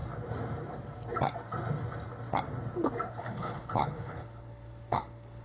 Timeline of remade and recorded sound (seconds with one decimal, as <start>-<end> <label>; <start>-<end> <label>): 0.0-3.2 recorded; 3.2-5.4 remade